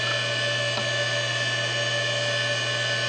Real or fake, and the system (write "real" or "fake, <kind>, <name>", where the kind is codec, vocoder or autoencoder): real